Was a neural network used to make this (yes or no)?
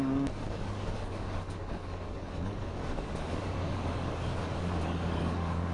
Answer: yes